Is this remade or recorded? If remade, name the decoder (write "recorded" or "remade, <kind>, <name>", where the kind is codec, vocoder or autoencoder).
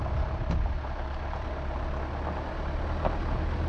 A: recorded